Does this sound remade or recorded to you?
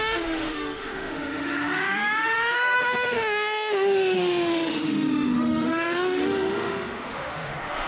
remade